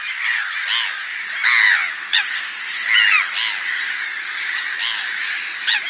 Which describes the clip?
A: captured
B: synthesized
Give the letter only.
A